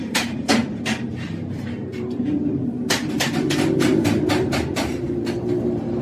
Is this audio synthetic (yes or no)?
yes